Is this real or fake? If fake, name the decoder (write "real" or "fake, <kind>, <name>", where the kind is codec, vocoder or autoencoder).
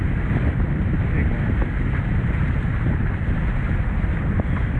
fake, vocoder, BigVGAN v2